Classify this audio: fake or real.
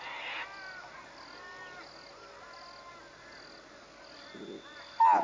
real